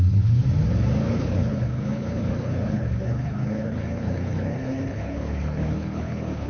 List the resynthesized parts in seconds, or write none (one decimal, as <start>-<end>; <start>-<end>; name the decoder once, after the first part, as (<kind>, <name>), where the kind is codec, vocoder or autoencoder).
0.0-0.4 (codec, HILCodec); 1.1-6.5